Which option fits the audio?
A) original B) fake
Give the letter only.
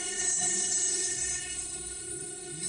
B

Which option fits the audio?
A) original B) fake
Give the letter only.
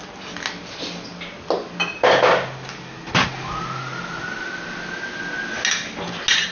A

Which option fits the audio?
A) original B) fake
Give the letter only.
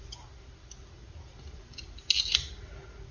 A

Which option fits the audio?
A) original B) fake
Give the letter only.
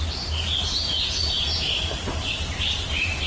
A